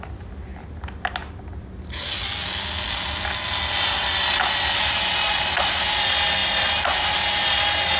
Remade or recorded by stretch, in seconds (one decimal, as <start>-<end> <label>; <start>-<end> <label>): 0.0-8.0 recorded